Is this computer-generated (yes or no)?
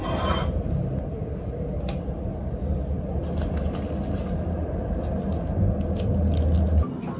no